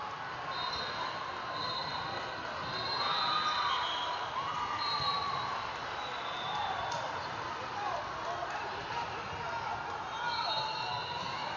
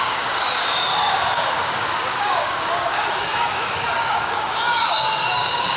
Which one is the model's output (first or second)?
second